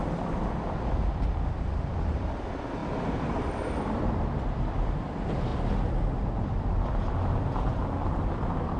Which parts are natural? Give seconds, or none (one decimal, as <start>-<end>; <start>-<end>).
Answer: 2.8-3.5; 5.5-6.5